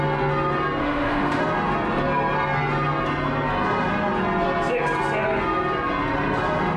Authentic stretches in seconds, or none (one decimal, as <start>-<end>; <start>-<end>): 0.0-0.8; 1.4-6.8